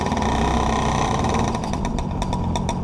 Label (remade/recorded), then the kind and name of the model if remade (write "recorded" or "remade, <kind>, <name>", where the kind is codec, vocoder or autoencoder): recorded